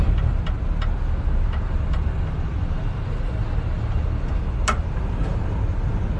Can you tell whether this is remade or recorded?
recorded